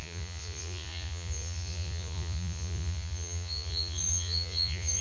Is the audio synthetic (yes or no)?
yes